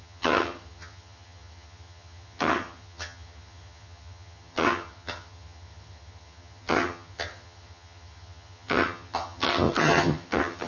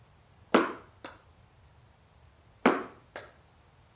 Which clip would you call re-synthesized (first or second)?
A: first